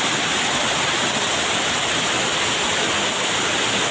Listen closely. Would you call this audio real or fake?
real